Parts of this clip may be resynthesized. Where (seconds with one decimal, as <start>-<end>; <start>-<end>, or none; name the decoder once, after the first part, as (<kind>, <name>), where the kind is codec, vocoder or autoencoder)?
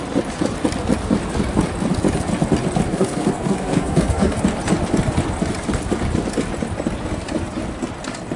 2.9-4.4 (codec, SNAC)